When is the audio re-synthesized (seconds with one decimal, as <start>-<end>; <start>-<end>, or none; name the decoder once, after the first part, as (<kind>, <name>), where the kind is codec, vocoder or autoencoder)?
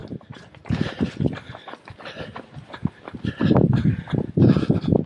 none